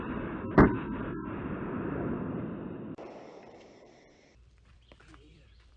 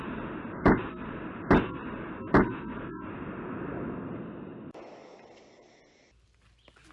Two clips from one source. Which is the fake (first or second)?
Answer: first